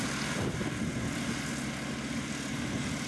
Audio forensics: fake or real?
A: real